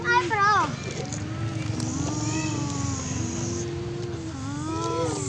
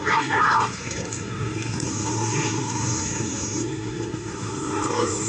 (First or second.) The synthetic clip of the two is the second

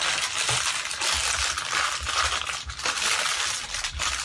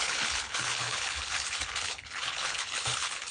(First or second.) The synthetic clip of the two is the second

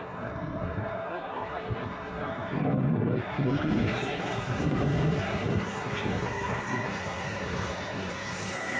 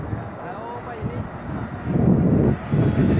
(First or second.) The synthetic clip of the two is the first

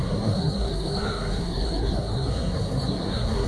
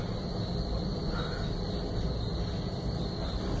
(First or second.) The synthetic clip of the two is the first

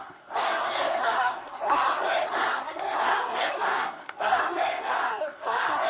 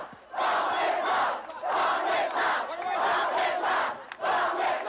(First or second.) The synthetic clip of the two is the first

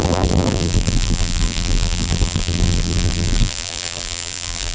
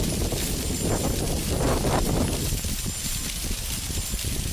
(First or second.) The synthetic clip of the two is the first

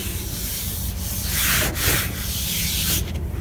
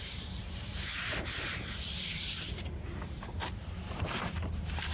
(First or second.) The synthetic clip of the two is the second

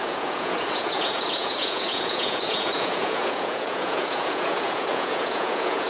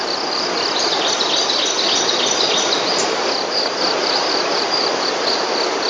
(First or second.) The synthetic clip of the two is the first